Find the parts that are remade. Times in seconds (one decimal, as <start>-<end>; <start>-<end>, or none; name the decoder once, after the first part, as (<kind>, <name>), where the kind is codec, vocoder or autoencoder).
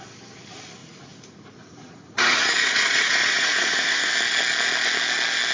0.8-4.1 (vocoder, Vocos)